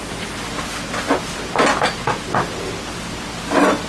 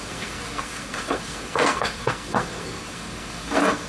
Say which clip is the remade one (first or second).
second